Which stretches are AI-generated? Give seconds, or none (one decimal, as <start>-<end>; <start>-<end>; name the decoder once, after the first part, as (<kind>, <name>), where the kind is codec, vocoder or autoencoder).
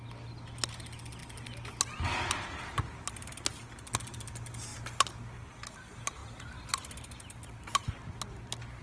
none